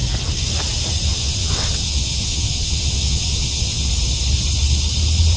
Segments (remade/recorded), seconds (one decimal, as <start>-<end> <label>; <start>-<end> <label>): 0.0-1.1 recorded; 1.1-3.9 remade; 3.9-5.4 recorded